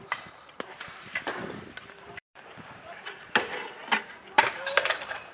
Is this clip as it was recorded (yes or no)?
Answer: no